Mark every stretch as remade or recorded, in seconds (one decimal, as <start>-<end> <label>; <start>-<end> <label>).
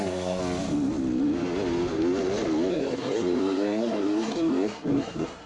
0.0-0.4 remade; 0.4-2.7 recorded; 2.7-5.5 remade